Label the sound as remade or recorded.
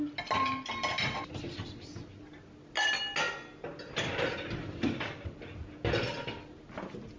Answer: recorded